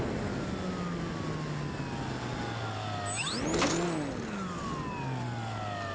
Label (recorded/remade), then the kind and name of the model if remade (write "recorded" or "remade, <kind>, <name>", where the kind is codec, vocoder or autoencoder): recorded